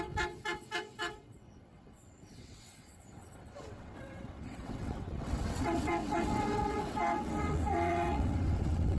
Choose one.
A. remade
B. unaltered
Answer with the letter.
A